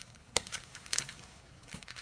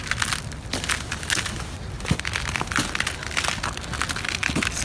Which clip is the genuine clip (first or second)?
second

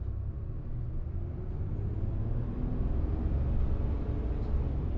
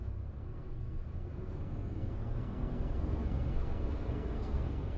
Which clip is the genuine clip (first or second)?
first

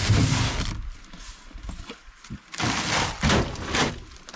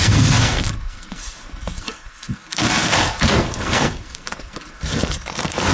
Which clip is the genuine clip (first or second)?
first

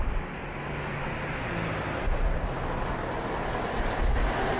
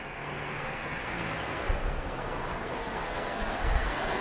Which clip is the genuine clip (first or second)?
first